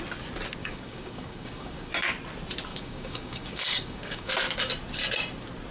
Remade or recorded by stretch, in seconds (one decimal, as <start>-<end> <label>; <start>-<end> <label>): 0.0-0.6 recorded; 0.6-1.9 remade; 1.9-2.7 recorded; 2.7-4.3 remade; 4.3-5.7 recorded

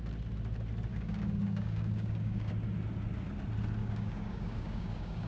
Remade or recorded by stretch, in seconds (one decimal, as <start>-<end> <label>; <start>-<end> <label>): 0.0-0.9 recorded; 0.9-2.5 remade; 2.5-3.8 recorded; 3.8-5.3 remade

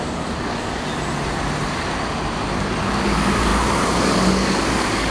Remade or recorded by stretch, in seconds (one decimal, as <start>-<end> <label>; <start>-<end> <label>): 0.0-0.9 remade; 0.9-2.8 recorded; 2.8-5.1 remade

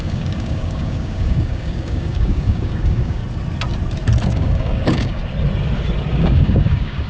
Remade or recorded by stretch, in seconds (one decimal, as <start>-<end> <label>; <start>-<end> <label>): 0.0-3.2 remade; 3.2-4.2 recorded; 4.2-5.2 remade; 5.2-6.1 recorded; 6.1-7.1 remade